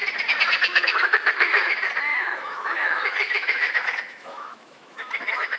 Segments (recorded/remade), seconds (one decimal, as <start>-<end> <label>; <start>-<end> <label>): 0.0-0.7 recorded; 0.7-1.7 remade; 1.7-2.1 recorded; 2.1-5.6 remade